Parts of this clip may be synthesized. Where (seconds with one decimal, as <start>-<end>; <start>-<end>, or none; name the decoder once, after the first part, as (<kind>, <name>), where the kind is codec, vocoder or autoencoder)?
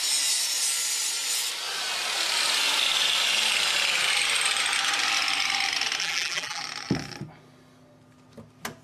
6.0-6.6 (vocoder, BigVGAN v2)